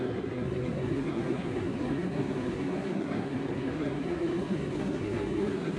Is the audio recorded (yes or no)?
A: no